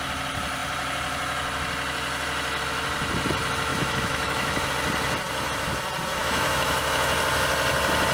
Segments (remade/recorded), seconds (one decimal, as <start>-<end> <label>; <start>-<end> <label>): 0.0-3.7 recorded; 3.7-4.7 remade; 4.7-6.2 recorded; 6.2-7.2 remade; 7.2-8.1 recorded